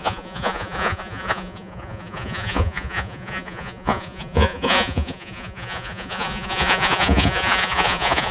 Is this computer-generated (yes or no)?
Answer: yes